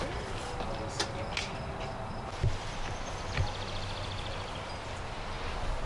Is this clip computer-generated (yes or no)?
no